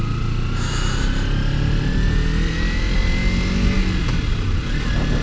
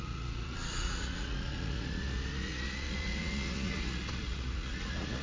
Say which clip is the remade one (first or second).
second